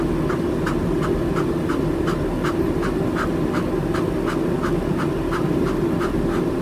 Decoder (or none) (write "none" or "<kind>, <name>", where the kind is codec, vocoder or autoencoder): none